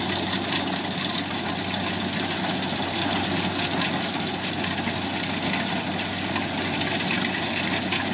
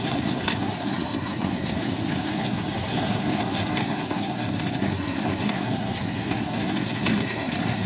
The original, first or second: first